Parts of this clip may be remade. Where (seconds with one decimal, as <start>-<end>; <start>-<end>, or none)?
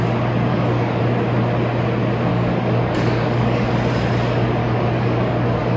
0.5-1.0; 2.3-3.7; 4.6-5.8